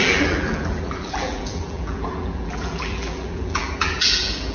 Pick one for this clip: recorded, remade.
remade